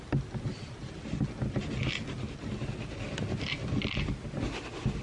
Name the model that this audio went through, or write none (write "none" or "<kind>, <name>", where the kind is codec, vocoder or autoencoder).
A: none